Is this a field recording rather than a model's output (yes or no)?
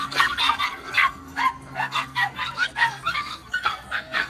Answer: no